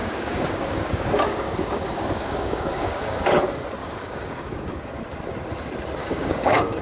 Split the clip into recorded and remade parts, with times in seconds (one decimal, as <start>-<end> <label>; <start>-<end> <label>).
0.0-3.4 remade; 3.4-3.8 recorded; 3.8-4.9 remade; 4.9-6.0 recorded; 6.0-6.8 remade